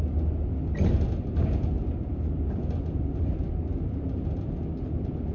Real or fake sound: real